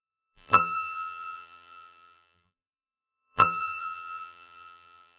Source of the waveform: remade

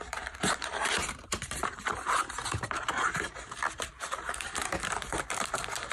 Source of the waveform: remade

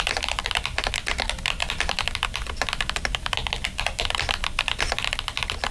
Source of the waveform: remade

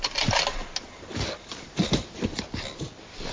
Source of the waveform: recorded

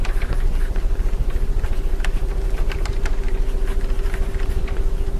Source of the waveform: remade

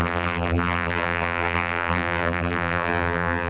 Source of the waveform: remade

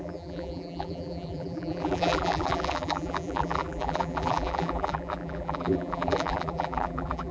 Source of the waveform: remade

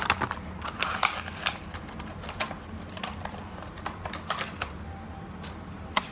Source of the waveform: recorded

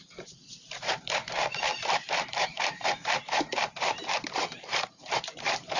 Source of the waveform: remade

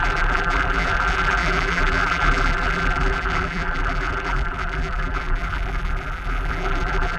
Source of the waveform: remade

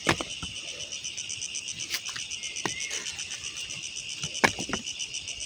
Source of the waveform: recorded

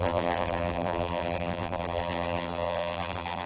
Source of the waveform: remade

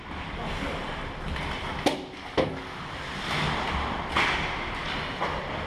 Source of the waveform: recorded